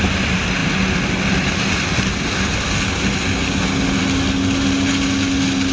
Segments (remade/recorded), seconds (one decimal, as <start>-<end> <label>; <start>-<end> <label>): 0.0-5.7 recorded